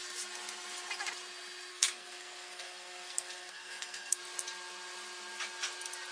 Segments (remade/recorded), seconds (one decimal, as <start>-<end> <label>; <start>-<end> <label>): 0.0-1.7 recorded; 1.7-4.2 remade; 4.2-6.1 recorded